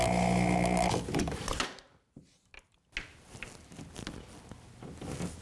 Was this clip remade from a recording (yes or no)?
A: no